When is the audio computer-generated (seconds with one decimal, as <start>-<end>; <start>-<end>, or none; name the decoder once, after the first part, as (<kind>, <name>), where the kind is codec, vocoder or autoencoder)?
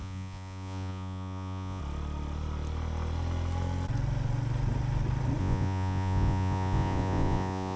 0.0-1.8 (vocoder, Vocos); 5.4-7.8